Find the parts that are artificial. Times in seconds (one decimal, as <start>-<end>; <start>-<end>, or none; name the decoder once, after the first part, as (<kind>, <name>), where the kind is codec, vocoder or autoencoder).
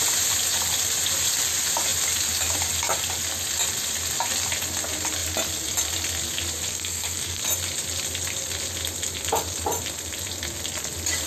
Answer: 6.7-7.4 (codec, SNAC)